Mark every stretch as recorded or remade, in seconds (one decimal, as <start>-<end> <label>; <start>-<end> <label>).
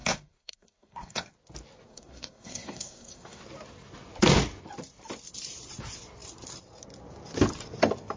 0.0-1.3 remade; 1.3-1.9 recorded; 1.9-3.4 remade; 3.4-8.2 recorded